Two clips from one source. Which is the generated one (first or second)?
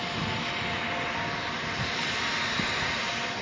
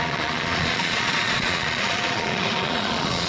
second